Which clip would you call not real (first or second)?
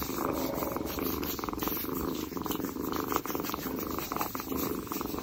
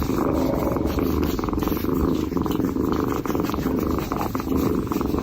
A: first